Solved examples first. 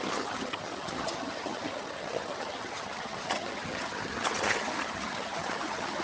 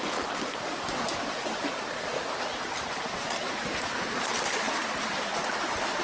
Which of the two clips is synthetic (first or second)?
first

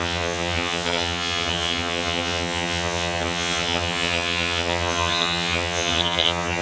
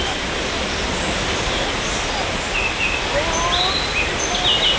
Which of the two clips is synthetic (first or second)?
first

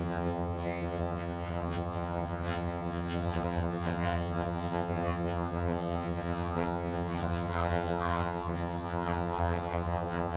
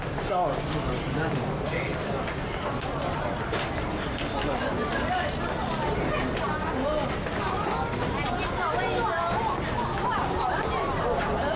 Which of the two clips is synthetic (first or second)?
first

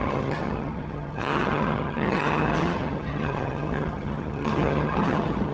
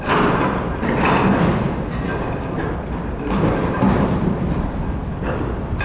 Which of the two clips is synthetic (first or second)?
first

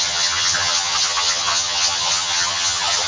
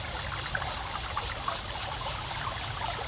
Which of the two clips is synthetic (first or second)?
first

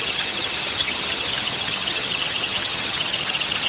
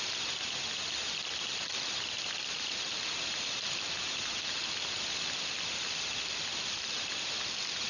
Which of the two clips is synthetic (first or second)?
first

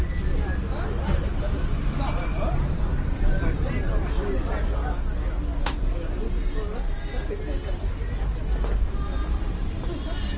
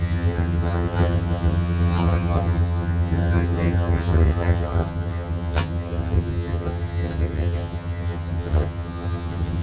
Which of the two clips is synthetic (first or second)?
second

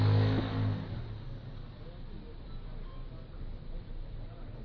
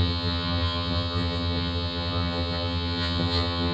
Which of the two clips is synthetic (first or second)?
second